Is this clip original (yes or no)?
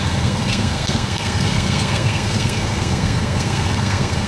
no